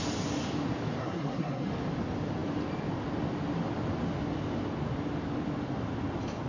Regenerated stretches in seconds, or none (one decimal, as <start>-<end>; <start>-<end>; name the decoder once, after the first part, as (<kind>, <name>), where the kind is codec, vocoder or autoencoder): 1.0-1.7 (codec, SNAC)